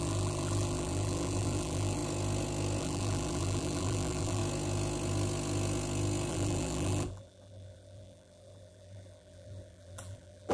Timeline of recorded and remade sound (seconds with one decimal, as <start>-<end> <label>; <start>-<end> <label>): 0.0-2.0 remade; 2.0-2.8 recorded; 2.8-4.4 remade; 4.4-6.3 recorded; 6.3-10.5 remade